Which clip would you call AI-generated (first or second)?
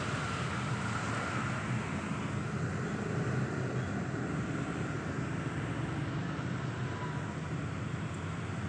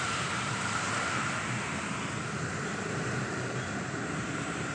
second